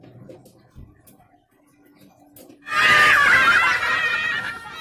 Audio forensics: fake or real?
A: real